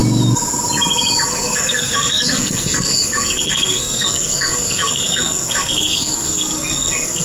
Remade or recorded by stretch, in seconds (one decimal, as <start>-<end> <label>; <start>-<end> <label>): 0.0-1.3 recorded; 1.3-7.2 remade